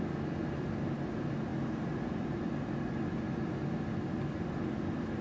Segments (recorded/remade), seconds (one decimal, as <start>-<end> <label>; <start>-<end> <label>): 0.0-1.5 recorded; 1.5-2.5 remade; 2.5-5.2 recorded